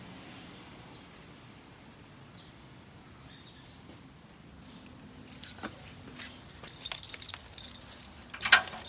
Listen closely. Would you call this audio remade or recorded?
recorded